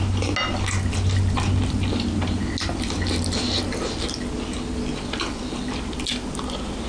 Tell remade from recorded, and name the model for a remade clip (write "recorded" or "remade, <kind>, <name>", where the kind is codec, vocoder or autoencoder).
recorded